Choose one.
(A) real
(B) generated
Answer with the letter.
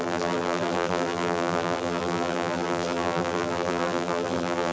B